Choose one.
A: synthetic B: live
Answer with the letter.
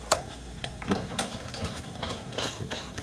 A